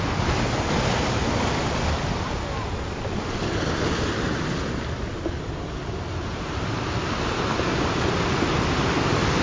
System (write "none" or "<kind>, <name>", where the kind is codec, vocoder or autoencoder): none